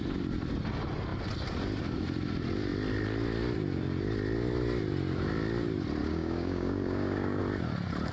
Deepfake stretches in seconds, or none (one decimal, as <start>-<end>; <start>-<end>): 6.0-7.4